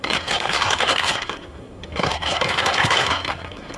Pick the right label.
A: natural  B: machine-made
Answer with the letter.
B